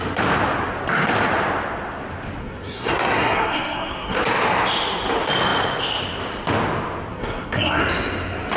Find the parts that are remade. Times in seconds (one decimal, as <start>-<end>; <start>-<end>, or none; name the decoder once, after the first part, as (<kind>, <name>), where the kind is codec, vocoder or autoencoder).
2.4-4.2 (codec, SNAC); 7.1-7.8